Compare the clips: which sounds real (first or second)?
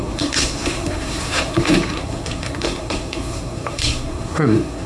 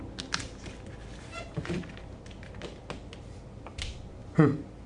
second